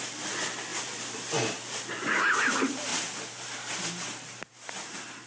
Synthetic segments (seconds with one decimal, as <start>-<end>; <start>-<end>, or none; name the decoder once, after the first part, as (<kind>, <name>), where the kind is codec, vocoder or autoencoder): 0.7-2.1 (vocoder, BigVGAN v2); 2.9-4.5